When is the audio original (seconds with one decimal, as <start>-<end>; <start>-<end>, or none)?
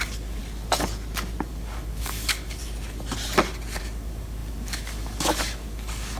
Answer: 0.4-1.5; 2.6-3.8